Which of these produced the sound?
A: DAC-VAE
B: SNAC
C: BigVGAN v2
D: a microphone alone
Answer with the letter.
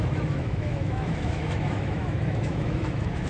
A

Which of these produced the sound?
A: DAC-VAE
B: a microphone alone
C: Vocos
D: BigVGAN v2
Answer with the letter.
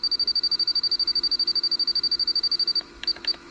A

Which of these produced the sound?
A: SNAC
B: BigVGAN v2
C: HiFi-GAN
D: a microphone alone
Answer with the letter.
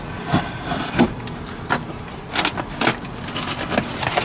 B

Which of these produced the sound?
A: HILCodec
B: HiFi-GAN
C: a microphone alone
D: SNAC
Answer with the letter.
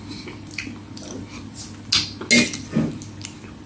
C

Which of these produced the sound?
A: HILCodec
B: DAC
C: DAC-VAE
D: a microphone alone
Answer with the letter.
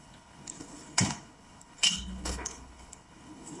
A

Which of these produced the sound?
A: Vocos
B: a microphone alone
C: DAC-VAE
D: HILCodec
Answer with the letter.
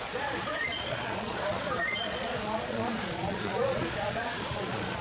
A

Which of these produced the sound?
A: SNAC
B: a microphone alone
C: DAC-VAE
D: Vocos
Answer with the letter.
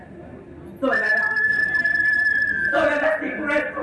B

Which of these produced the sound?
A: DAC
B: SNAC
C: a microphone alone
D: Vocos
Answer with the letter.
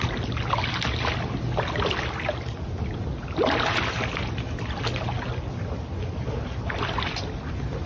C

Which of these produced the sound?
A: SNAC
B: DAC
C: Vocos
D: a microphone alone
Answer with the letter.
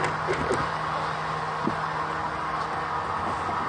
D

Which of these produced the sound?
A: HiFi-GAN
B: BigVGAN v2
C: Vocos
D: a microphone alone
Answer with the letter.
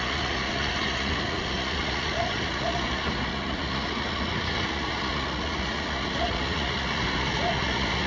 C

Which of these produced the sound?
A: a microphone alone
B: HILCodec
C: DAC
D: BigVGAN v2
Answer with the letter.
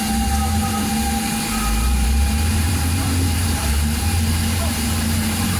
D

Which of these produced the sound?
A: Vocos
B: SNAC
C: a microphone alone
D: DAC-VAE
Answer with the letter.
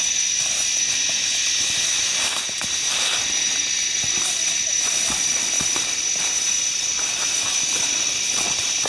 C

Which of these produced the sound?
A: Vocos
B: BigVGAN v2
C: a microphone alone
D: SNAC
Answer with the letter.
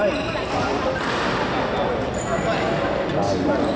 C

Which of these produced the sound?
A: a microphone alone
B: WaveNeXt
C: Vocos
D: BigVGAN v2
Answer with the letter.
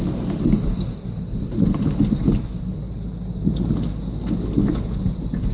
A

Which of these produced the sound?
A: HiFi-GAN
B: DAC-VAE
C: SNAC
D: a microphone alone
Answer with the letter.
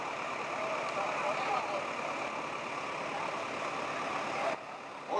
D